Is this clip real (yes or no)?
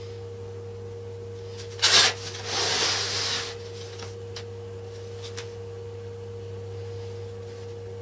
yes